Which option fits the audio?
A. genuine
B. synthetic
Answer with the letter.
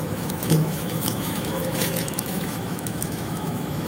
B